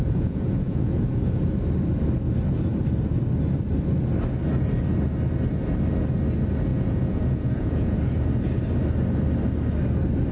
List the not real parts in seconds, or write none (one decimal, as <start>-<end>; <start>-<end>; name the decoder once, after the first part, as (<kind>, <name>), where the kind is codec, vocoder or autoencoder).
0.0-1.5 (vocoder, Vocos); 6.7-8.0